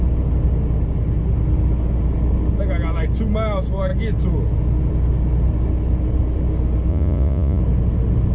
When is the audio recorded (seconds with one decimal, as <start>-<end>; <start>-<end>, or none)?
0.0-6.9; 7.6-8.3